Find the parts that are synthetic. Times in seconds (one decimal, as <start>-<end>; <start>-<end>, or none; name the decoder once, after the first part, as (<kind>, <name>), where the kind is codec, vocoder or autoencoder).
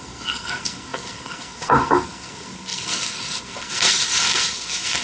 0.0-5.0 (codec, SNAC)